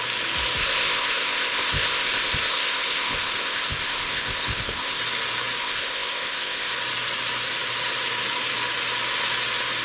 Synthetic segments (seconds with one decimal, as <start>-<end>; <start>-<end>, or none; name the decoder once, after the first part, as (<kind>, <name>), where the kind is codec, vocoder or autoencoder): 0.6-5.0 (codec, ZipCodec); 5.6-6.7